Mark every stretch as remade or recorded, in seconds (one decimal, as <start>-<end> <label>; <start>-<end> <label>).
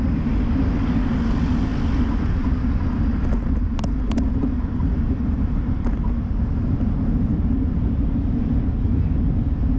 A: 0.0-9.8 recorded